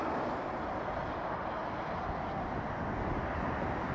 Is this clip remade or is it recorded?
recorded